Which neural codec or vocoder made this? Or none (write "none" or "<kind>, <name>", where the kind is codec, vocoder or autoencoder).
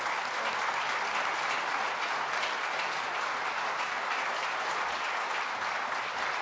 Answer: none